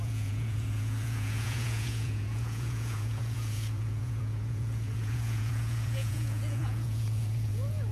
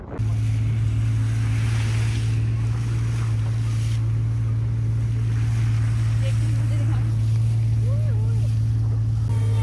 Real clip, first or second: second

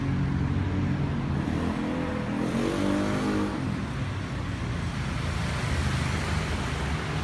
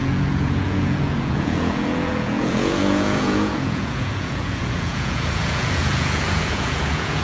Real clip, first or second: first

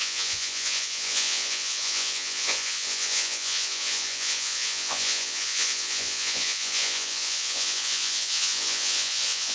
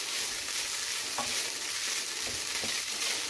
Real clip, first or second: second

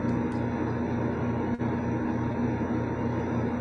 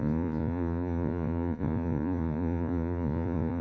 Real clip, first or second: first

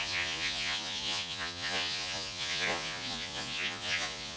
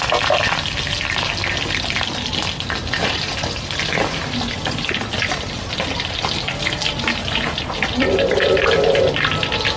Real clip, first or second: second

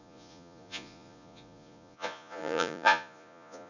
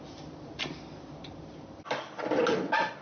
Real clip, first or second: second